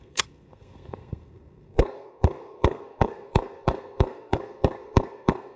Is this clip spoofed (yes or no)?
yes